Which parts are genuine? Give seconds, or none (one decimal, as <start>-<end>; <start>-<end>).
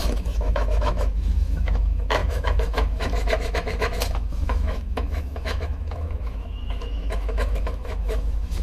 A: none